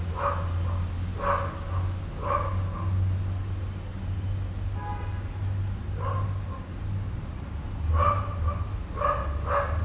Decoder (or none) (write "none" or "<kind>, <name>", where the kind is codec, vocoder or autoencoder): none